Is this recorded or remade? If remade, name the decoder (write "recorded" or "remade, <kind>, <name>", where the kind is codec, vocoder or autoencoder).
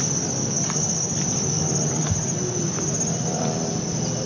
recorded